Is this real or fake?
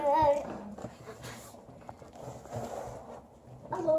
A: real